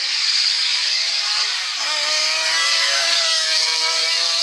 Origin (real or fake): fake